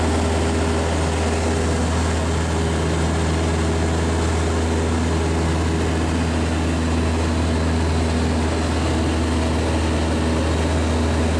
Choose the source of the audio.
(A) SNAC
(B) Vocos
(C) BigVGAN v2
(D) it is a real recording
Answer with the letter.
D